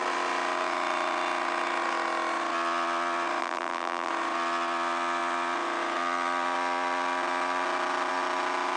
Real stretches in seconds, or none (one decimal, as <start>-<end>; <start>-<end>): 0.0-3.4; 4.1-8.8